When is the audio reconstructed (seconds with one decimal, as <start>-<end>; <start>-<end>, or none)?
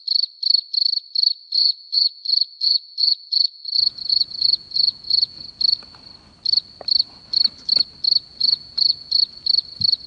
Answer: 1.6-5.5; 8.3-9.2